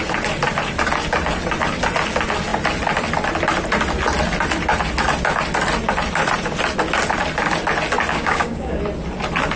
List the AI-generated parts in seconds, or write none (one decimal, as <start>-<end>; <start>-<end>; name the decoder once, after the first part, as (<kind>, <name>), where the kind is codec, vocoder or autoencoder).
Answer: 8.1-8.8 (codec, DAC)